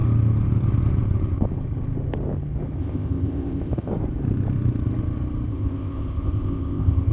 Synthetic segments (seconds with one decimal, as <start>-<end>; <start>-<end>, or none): 2.8-3.9; 5.5-7.1